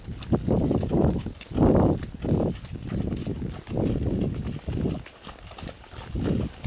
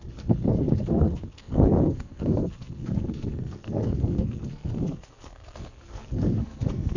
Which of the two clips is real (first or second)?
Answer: first